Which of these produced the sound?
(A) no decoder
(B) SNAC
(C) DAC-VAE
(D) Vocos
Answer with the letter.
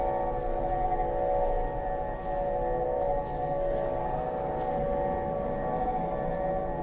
A